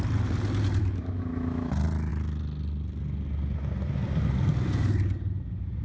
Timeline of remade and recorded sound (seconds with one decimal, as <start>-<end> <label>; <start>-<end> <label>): 0.0-0.8 recorded; 0.8-1.7 remade; 1.7-5.8 recorded